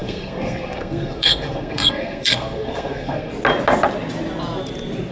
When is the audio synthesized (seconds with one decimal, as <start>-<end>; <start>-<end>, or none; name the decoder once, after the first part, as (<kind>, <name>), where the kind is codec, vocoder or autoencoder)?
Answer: 0.0-3.3 (codec, SNAC)